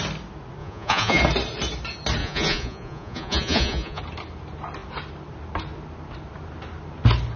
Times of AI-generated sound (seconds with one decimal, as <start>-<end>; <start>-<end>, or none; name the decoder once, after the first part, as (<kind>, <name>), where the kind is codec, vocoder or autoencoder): 0.6-1.2 (vocoder, Vocos); 2.2-4.0